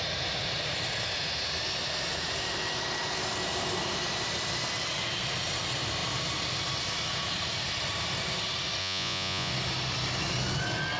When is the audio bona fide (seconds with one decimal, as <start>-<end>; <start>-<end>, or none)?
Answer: 0.0-8.8; 9.5-11.0